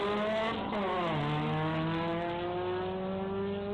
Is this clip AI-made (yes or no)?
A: no